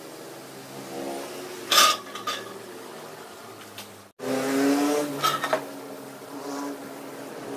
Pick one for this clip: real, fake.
real